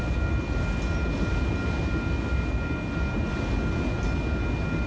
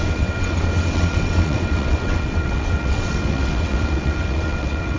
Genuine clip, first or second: first